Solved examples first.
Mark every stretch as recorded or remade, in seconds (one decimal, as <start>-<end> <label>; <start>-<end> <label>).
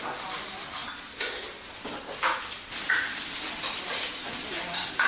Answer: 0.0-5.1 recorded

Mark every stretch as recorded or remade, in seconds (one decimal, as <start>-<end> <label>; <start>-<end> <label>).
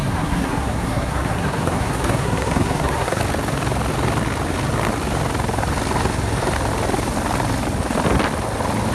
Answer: 0.0-3.2 remade; 3.2-8.9 recorded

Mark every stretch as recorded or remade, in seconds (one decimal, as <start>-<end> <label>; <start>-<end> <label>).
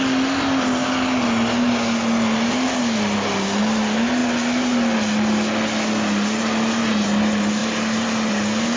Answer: 0.0-7.6 recorded; 7.6-8.3 remade; 8.3-8.8 recorded